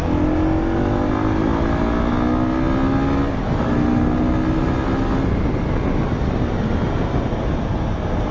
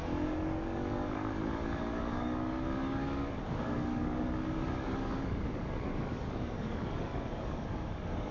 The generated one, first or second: second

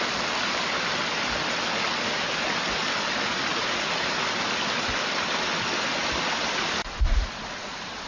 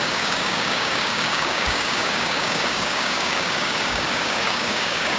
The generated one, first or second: second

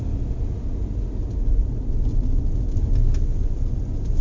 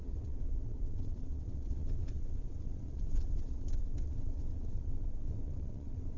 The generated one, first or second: second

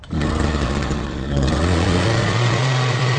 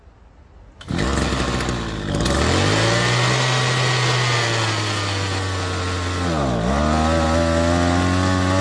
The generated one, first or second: first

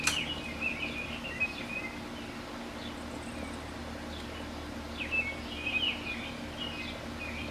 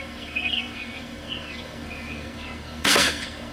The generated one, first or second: second